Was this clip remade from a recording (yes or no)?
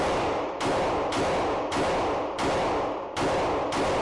no